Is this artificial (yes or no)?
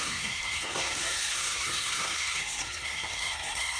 yes